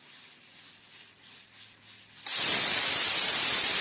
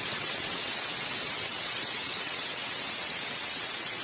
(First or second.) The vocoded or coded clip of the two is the second